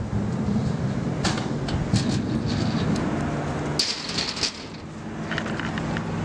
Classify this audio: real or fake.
real